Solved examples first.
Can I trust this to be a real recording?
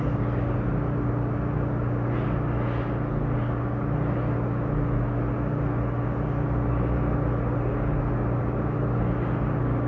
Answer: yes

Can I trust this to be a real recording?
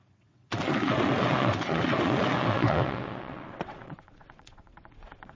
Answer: no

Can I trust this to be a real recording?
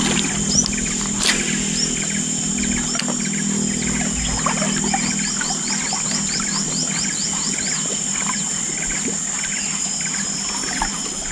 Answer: yes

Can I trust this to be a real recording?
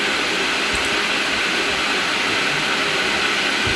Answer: yes